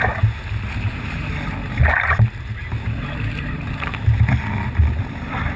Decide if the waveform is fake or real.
real